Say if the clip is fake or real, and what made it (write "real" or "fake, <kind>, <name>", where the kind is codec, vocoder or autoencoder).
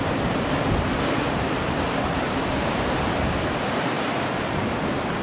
fake, vocoder, BigVGAN v2